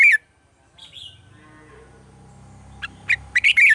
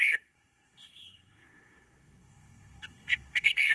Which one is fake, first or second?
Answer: second